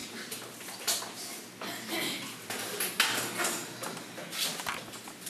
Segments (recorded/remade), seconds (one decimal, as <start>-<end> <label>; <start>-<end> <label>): 0.0-5.3 recorded